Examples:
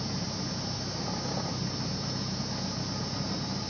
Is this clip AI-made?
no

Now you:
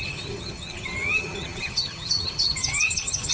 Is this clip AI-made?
yes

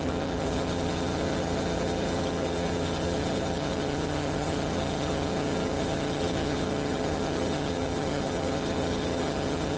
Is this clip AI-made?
yes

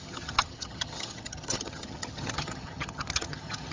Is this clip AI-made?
yes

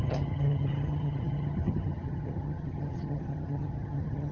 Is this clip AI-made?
yes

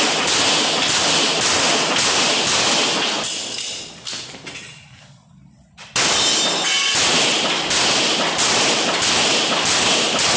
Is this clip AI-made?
no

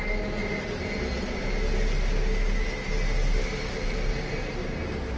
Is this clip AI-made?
no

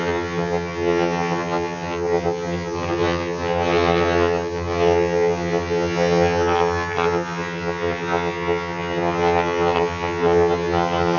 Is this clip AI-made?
yes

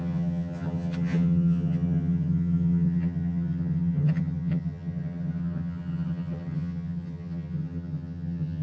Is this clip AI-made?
yes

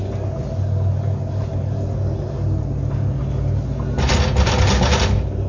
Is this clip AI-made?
no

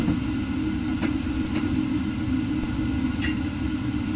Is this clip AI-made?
no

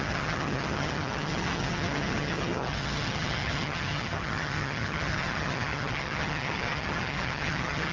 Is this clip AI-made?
yes